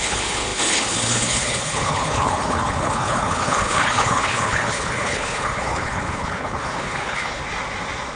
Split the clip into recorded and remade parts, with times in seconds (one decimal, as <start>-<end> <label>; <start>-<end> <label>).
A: 0.0-7.4 remade; 7.4-8.2 recorded